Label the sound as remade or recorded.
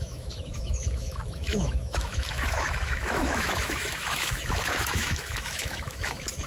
remade